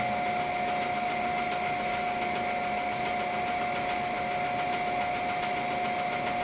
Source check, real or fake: real